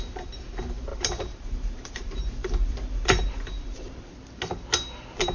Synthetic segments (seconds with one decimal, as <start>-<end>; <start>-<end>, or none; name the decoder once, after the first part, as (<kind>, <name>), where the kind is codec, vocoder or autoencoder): 0.9-4.1 (vocoder, BigVGAN v2)